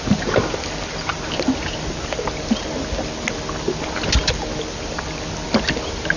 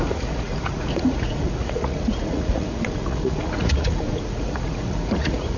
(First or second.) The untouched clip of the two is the first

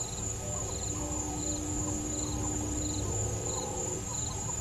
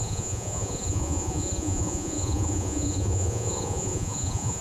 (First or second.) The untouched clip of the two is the first